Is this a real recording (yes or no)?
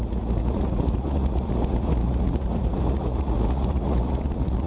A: no